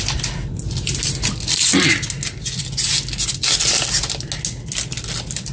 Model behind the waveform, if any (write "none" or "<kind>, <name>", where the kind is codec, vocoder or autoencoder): none